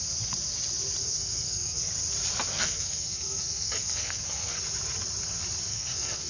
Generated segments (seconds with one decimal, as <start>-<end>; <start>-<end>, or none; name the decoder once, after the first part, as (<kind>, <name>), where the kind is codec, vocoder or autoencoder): 1.0-1.9 (codec, SNAC); 2.5-4.6; 5.7-6.3